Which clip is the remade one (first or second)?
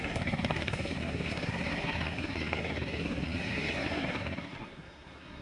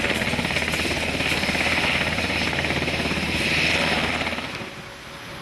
first